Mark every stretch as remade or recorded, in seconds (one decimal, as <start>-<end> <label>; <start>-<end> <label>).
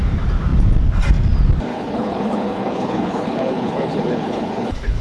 0.0-1.7 recorded; 1.7-5.0 remade